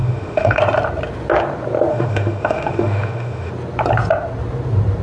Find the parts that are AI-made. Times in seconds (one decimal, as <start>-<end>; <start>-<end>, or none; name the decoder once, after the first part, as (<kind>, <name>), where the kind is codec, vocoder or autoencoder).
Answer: 0.0-0.6 (autoencoder, DAC-VAE); 1.9-3.5